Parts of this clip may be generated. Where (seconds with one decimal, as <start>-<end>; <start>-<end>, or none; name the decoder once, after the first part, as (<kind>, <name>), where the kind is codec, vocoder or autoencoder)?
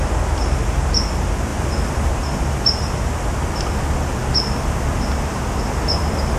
1.5-2.1 (vocoder, BigVGAN v2)